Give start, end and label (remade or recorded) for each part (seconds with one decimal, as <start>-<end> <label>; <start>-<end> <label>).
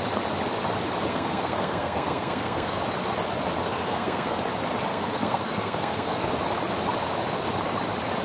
0.0-1.1 recorded; 1.1-2.8 remade; 2.8-3.6 recorded; 3.6-4.4 remade; 4.4-4.9 recorded; 4.9-6.3 remade; 6.3-8.2 recorded